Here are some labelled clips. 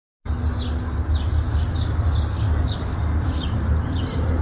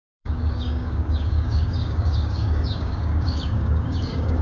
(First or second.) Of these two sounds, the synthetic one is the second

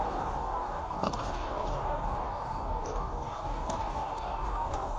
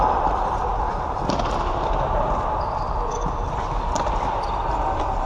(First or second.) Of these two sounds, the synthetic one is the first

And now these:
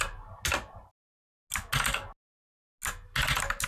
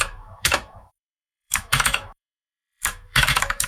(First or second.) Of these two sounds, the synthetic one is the second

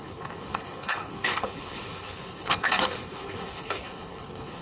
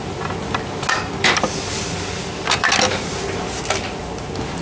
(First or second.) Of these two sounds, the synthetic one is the first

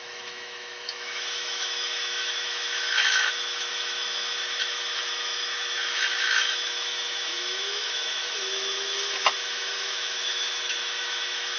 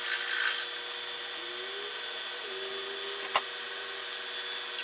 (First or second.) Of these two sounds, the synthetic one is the first